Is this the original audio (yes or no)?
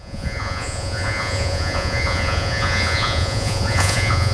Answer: no